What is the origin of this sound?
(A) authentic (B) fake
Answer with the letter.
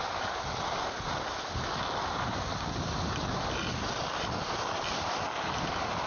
A